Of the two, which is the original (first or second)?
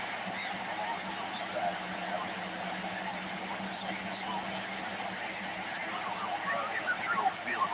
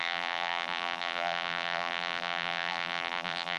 first